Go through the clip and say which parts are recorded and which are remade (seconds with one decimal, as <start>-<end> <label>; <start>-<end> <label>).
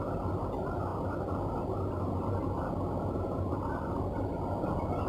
0.0-5.1 recorded